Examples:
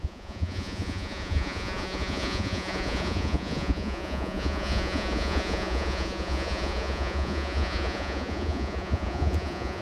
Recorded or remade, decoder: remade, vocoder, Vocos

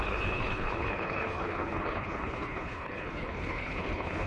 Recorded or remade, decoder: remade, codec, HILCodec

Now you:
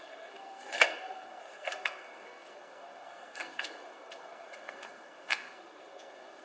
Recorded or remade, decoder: remade, codec, SNAC